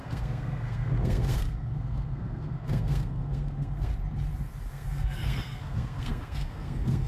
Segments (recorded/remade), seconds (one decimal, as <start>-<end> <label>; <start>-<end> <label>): 0.0-3.9 remade; 3.9-4.7 recorded; 4.7-7.1 remade